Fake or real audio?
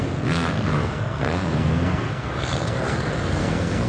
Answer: fake